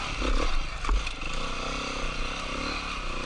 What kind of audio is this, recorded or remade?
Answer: recorded